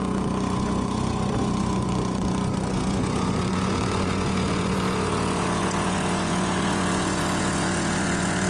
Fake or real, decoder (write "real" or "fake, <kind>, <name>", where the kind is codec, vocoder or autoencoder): fake, vocoder, Vocos